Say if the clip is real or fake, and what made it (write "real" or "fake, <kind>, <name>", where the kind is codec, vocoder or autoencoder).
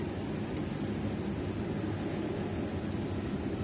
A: real